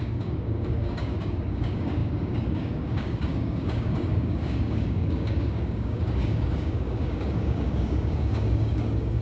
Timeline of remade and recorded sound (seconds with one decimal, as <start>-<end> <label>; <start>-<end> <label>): 0.0-9.2 remade